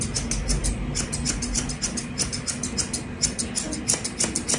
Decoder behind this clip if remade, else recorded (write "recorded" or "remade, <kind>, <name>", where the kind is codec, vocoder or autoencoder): recorded